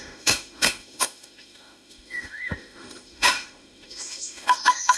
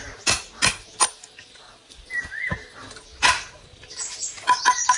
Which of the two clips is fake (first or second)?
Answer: first